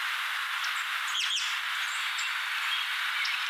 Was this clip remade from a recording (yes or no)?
no